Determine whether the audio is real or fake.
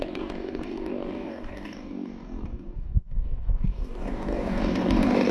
fake